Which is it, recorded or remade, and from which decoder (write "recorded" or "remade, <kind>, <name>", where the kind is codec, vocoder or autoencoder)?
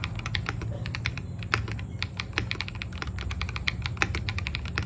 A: recorded